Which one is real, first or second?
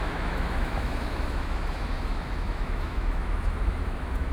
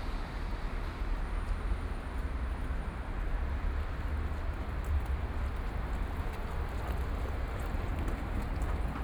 second